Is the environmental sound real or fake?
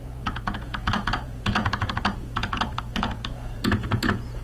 fake